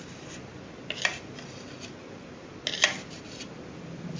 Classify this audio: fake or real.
real